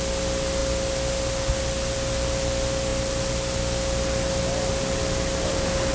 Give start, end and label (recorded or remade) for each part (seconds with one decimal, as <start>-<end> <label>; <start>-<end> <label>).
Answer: 0.0-5.9 recorded